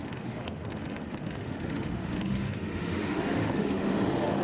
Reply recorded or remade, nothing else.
remade